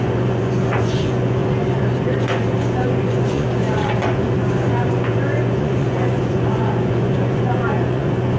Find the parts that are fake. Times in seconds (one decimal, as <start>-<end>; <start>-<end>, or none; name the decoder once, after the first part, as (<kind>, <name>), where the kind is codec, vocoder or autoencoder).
0.0-8.4 (vocoder, Vocos)